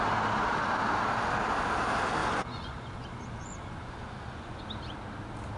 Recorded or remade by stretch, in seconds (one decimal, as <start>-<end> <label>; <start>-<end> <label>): 0.0-2.2 recorded; 2.2-4.6 remade; 4.6-5.6 recorded